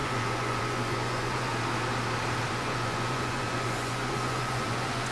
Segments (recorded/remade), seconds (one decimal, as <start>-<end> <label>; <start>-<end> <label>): 0.0-1.5 remade; 1.5-2.5 recorded; 2.5-5.1 remade